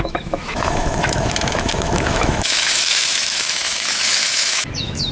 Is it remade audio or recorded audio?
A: remade